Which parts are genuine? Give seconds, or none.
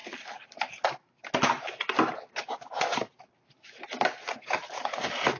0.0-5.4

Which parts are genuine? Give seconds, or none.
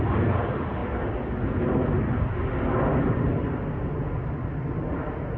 0.0-5.4